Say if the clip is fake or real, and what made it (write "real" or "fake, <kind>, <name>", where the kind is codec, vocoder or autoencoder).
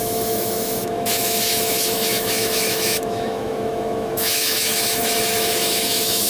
fake, autoencoder, DAC-VAE